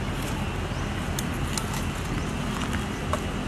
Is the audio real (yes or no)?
yes